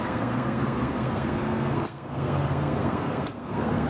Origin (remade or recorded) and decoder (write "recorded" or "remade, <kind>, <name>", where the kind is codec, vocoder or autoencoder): remade, codec, SNAC